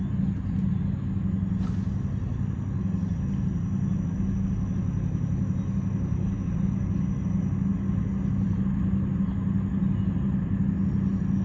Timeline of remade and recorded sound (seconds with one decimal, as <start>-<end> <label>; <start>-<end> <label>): 0.0-11.4 recorded